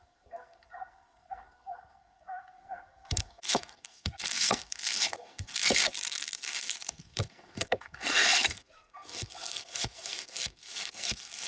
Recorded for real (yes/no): no